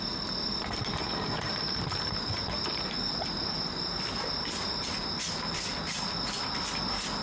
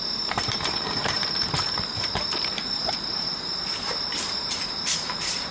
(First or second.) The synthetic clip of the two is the second